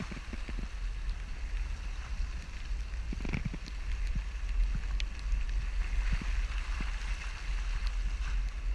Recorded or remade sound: recorded